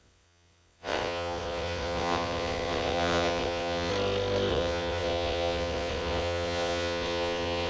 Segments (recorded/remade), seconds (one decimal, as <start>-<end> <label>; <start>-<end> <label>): 0.0-3.9 remade; 3.9-4.5 recorded; 4.5-7.7 remade